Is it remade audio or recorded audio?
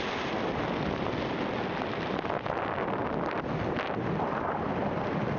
recorded